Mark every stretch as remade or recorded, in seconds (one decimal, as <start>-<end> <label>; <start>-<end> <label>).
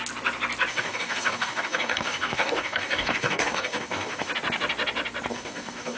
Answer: 0.0-0.7 recorded; 0.7-4.3 remade; 4.3-5.3 recorded; 5.3-6.0 remade